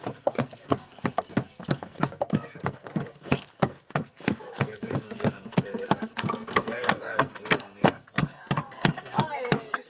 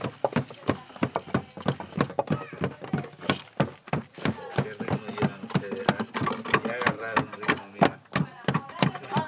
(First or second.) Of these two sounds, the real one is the second